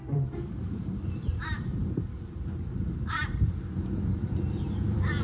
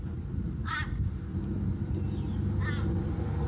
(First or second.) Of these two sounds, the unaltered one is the second